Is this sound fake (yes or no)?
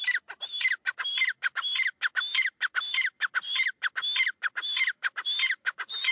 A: no